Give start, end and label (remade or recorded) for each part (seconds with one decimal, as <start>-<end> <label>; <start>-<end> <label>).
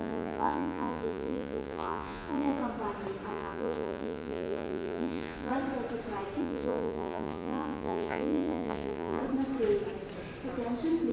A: 0.0-2.6 remade; 2.6-3.3 recorded; 3.3-5.5 remade; 5.5-6.4 recorded; 6.4-9.2 remade; 9.2-11.1 recorded